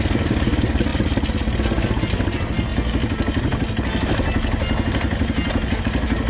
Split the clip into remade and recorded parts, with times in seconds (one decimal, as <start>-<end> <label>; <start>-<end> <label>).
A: 0.0-6.3 recorded